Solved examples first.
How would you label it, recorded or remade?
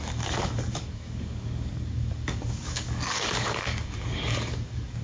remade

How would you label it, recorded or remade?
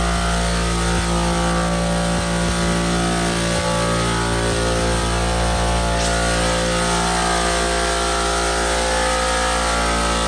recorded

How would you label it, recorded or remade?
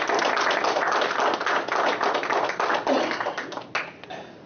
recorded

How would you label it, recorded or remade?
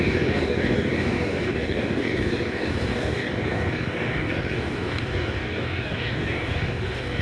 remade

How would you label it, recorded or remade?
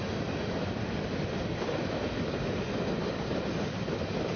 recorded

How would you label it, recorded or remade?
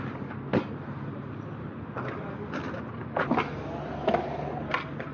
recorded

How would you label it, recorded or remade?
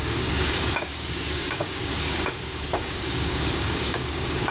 remade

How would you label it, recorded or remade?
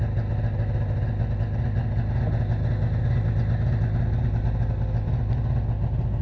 recorded